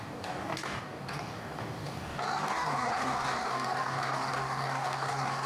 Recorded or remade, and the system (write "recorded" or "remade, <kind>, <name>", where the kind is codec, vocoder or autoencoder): remade, codec, DAC